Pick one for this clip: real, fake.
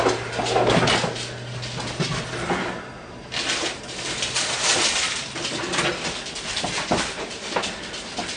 real